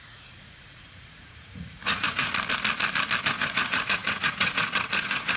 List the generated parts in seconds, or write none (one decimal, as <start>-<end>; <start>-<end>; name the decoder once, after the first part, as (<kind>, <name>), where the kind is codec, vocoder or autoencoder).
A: 0.0-2.3 (vocoder, Vocos); 3.3-5.4

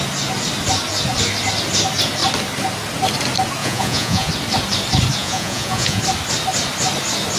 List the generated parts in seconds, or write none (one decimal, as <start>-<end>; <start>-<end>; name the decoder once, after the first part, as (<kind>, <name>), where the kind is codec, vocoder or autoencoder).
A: 3.6-4.3 (vocoder, Vocos); 5.2-6.0

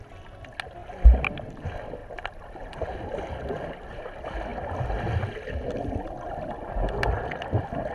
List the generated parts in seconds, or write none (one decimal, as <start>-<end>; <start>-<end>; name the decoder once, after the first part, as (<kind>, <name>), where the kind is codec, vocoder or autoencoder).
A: none

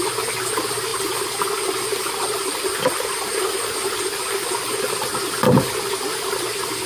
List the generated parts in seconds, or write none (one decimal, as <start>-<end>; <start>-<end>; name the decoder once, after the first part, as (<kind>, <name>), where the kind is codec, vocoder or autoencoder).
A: none

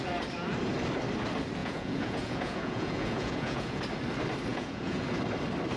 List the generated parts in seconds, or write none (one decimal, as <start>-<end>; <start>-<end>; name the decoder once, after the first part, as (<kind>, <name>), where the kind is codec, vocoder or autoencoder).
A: 1.6-3.8 (vocoder, Vocos); 4.5-5.0